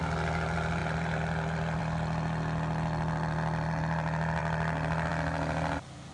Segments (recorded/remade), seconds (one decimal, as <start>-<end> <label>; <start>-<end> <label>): 0.0-6.1 recorded